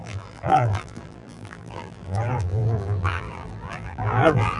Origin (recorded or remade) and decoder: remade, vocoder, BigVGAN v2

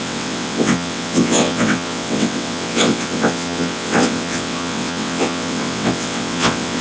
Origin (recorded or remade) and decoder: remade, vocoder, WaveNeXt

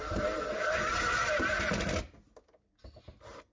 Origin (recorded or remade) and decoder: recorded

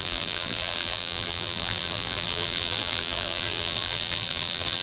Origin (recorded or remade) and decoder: remade, vocoder, BigVGAN v2